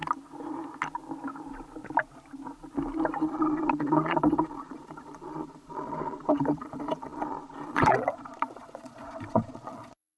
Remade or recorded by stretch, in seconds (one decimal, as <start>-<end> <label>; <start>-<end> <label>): 0.0-3.2 recorded; 3.2-10.2 remade